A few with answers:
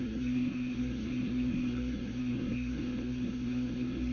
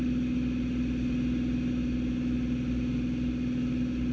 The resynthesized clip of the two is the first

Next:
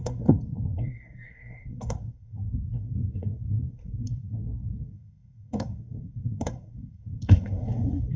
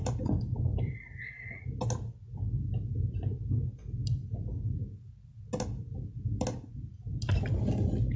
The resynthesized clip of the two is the first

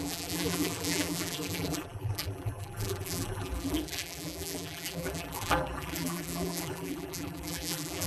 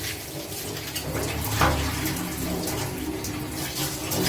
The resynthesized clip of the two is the first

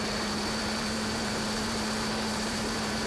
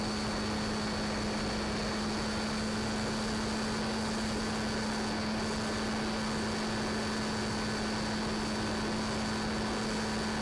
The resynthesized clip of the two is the first